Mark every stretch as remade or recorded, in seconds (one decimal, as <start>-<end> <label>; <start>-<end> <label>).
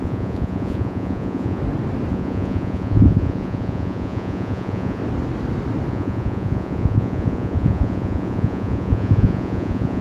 0.0-1.6 remade; 1.6-2.1 recorded; 2.1-5.0 remade; 5.0-5.9 recorded; 5.9-10.0 remade